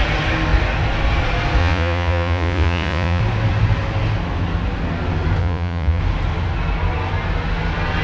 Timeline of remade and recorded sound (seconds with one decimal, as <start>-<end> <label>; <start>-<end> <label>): 0.0-1.6 recorded; 1.6-3.2 remade; 3.2-5.4 recorded; 5.4-6.0 remade; 6.0-8.0 recorded